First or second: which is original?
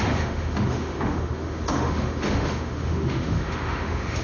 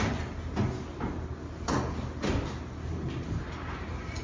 second